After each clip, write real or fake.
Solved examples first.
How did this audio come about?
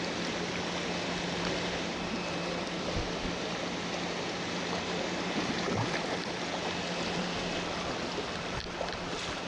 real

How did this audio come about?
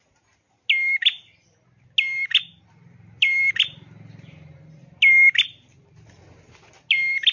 real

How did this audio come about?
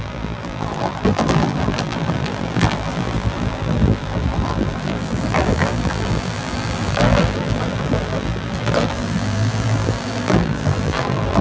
fake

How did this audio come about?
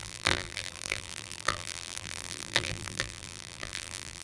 fake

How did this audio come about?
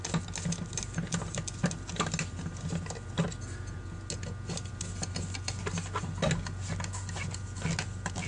real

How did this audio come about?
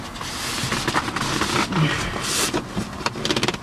fake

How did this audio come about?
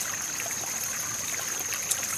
real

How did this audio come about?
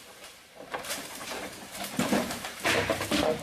fake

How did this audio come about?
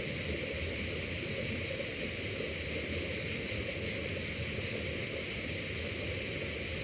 real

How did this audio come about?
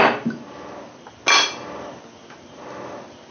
real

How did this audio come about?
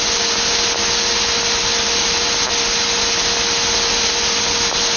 real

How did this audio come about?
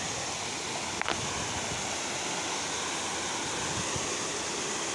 real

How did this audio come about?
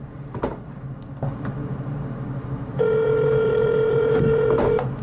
fake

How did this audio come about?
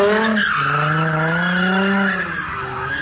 real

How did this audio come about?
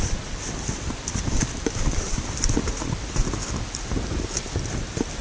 fake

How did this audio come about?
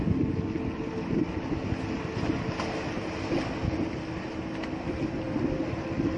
real